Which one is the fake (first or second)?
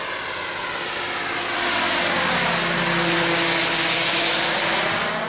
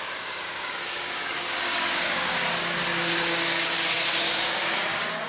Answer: second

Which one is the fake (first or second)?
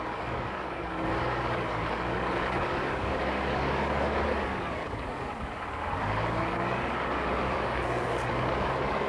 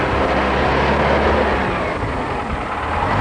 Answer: first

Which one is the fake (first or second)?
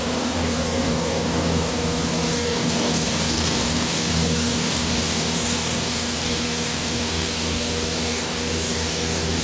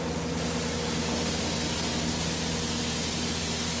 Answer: first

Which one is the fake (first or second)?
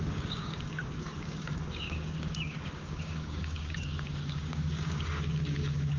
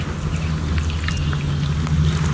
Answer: first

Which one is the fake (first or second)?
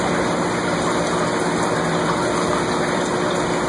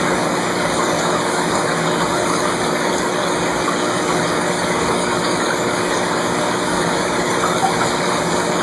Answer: second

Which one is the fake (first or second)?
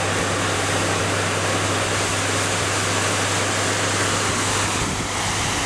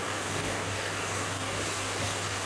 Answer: second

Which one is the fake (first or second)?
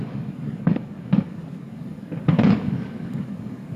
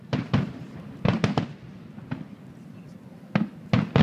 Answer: first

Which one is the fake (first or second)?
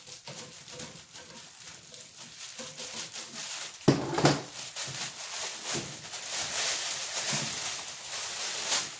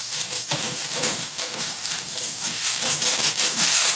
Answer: second